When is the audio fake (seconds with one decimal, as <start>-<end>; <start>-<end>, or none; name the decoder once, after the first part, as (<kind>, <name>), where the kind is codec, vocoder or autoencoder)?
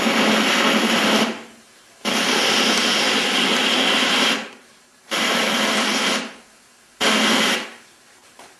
0.0-2.0 (vocoder, BigVGAN v2); 4.0-5.9; 7.7-8.6